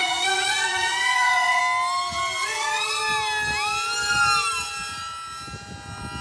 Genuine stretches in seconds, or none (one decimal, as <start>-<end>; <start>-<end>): 1.6-2.4; 3.0-6.2